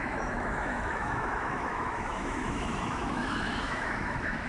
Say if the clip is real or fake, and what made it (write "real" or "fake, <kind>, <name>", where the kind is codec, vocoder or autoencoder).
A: fake, autoencoder, DAC-VAE